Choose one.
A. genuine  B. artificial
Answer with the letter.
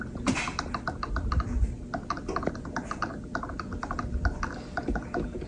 A